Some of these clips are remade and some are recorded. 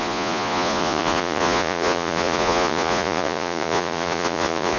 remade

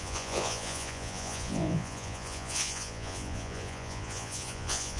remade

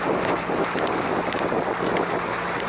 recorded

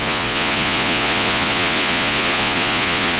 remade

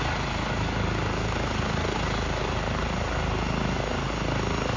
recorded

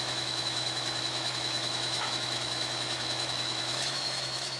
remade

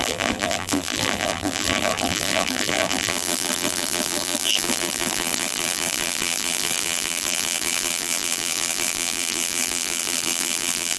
remade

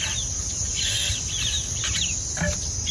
recorded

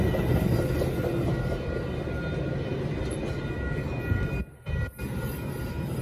recorded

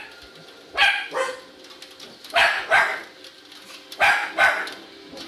recorded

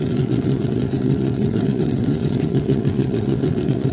remade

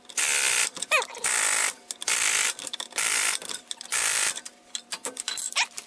remade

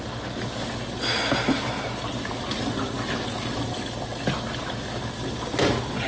recorded